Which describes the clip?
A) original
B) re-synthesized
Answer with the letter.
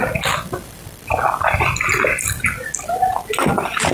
A